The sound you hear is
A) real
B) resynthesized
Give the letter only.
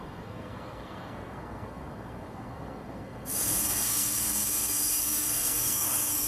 B